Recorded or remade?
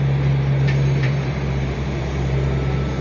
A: remade